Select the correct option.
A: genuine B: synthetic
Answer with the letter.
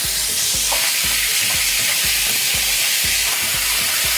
B